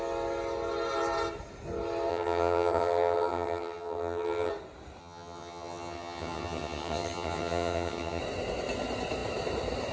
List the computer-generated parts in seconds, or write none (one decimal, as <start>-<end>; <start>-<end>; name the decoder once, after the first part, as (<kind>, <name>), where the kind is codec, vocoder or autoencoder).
2.1-4.5 (vocoder, HiFi-GAN); 5.0-8.2